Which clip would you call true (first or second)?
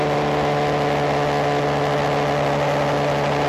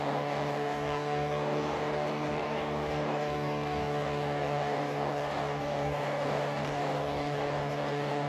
first